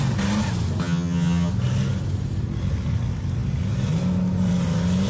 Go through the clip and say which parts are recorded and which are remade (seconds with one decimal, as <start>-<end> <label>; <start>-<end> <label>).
0.0-0.8 recorded; 0.8-1.5 remade; 1.5-5.1 recorded